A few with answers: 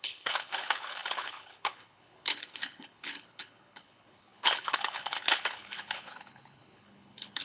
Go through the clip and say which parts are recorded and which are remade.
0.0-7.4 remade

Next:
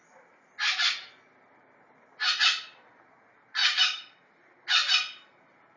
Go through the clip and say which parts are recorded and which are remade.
0.0-3.6 recorded; 3.6-4.2 remade; 4.2-4.8 recorded; 4.8-5.8 remade

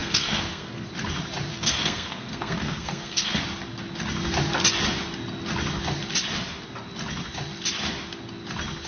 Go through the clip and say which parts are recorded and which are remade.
0.0-0.9 remade; 0.9-1.5 recorded; 1.5-3.4 remade; 3.4-8.9 recorded

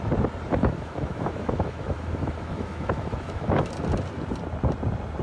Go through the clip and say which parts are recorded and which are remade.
0.0-0.6 recorded; 0.6-3.7 remade; 3.7-5.2 recorded

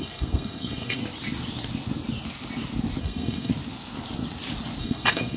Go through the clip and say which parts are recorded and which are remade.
0.0-1.0 remade; 1.0-3.0 recorded; 3.0-3.5 remade; 3.5-4.8 recorded; 4.8-5.4 remade

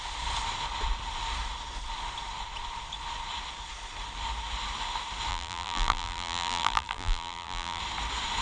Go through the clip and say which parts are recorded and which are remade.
0.0-5.3 recorded; 5.3-7.8 remade; 7.8-8.4 recorded

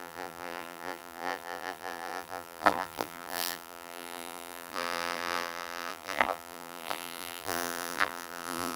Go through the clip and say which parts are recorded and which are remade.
0.0-8.8 remade

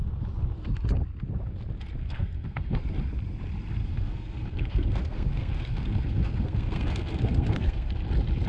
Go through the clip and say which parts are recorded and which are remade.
0.0-2.0 recorded; 2.0-2.8 remade; 2.8-3.8 recorded; 3.8-7.9 remade; 7.9-8.5 recorded